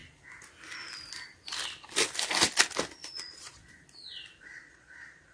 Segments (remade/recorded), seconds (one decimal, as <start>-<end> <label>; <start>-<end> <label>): 0.0-3.2 recorded; 3.2-3.6 remade; 3.6-4.4 recorded; 4.4-5.3 remade